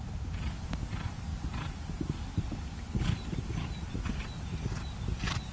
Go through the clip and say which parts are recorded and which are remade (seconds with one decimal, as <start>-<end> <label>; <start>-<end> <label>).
0.0-5.5 recorded